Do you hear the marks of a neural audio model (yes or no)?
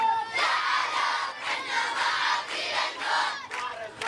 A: no